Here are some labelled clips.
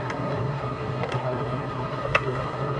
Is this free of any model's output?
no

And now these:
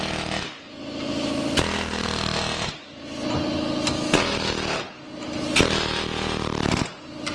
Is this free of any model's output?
yes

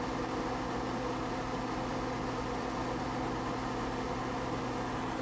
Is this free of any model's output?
yes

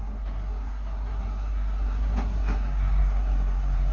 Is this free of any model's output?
no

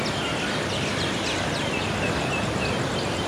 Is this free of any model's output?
yes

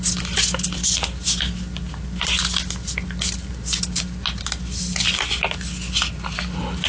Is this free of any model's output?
yes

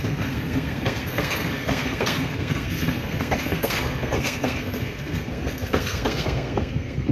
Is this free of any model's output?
no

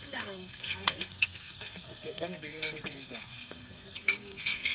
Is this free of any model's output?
no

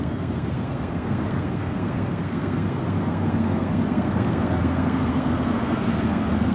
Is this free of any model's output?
no